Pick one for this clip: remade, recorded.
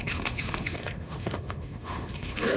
remade